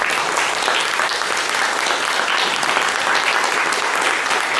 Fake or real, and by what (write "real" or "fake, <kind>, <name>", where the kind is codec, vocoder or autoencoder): real